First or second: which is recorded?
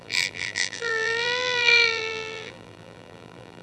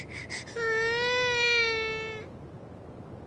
second